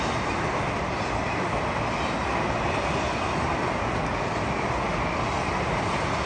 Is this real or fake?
real